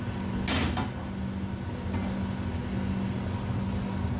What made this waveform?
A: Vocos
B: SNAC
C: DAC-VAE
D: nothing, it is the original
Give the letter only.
D